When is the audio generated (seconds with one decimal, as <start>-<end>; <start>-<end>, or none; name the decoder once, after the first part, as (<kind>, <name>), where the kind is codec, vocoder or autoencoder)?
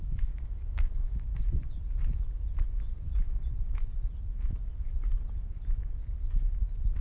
0.0-1.2 (autoencoder, DAC-VAE)